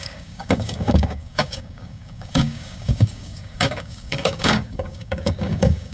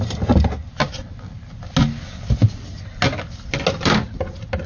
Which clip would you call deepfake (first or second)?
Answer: first